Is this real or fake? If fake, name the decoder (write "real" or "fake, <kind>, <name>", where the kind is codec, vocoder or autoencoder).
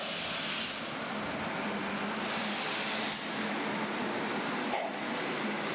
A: real